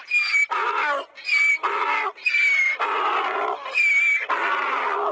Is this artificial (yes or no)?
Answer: no